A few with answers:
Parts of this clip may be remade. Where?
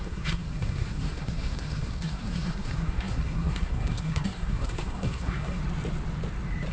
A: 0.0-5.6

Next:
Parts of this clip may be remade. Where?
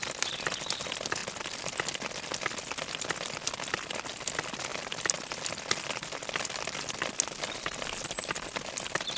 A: none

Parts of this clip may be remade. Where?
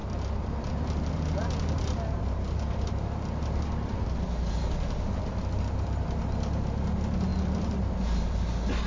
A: 0.0-5.1; 7.3-8.5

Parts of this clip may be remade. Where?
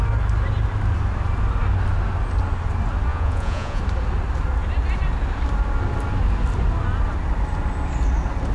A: 3.1-3.8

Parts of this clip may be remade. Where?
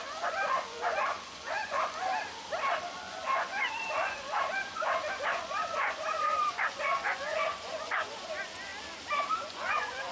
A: 0.0-2.1; 2.9-8.7; 9.3-10.1